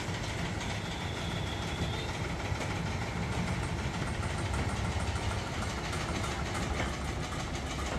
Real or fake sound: real